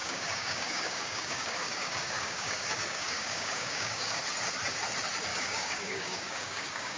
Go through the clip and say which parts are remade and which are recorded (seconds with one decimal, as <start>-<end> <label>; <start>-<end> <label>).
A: 0.0-4.2 remade; 4.2-5.3 recorded; 5.3-7.0 remade

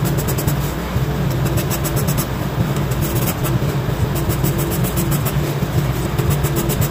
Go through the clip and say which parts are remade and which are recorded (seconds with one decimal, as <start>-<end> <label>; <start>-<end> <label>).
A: 0.0-6.9 recorded

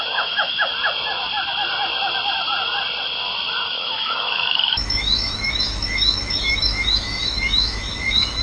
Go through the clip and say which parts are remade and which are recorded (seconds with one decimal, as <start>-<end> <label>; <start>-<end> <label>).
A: 0.0-0.7 remade; 0.7-3.6 recorded; 3.6-8.4 remade

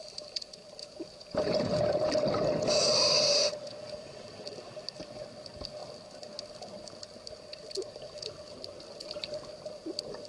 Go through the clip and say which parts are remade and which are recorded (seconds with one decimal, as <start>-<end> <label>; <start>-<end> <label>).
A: 0.0-0.8 recorded; 0.8-2.1 remade; 2.1-10.3 recorded

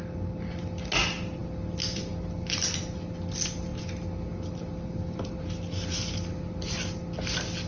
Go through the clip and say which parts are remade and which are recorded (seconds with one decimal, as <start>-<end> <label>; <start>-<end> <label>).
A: 0.0-7.7 recorded